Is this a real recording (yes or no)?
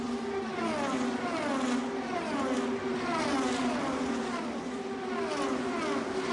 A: yes